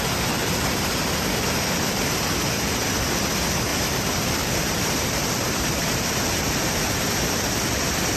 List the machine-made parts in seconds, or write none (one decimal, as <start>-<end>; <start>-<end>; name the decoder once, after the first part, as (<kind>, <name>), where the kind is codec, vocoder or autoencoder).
0.4-2.8 (vocoder, BigVGAN v2); 3.7-7.0